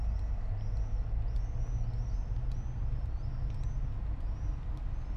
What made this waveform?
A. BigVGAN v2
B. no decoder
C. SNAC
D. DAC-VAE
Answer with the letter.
B